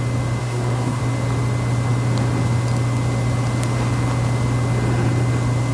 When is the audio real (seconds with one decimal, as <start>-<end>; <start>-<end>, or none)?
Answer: 0.0-0.4; 1.0-5.7